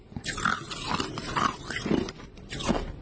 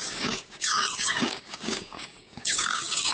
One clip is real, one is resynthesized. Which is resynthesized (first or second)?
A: second